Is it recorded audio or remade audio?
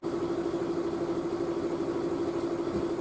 recorded